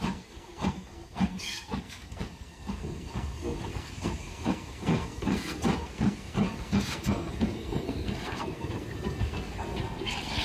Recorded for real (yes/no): no